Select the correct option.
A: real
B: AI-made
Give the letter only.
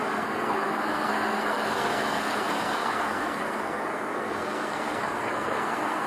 B